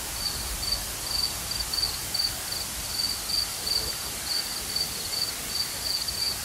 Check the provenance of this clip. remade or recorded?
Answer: recorded